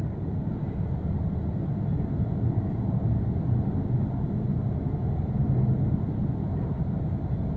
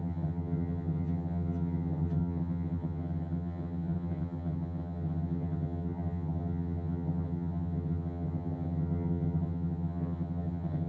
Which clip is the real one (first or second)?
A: first